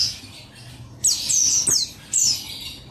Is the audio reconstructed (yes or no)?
no